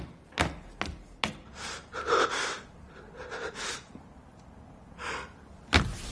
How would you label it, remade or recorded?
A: recorded